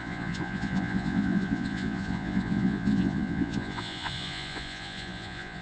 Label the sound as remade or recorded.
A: remade